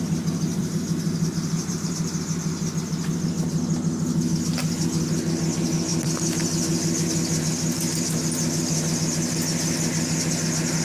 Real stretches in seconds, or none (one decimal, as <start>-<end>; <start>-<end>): 0.0-0.6; 2.1-10.8